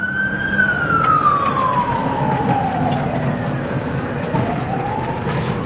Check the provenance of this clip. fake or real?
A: real